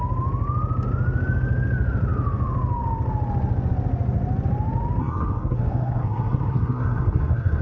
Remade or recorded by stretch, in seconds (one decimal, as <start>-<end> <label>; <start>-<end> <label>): 0.0-5.0 recorded; 5.0-7.6 remade